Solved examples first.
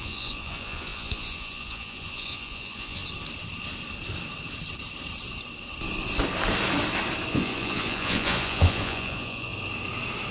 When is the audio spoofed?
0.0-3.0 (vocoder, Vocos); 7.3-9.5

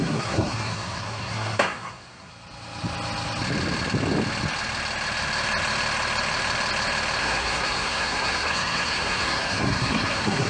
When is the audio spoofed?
0.0-2.3 (codec, SNAC); 7.2-10.5

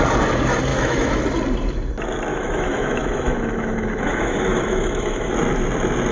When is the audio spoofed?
0.7-1.2 (autoencoder, DAC-VAE); 2.3-5.3

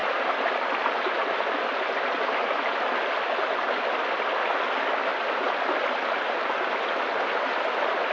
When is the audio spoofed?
none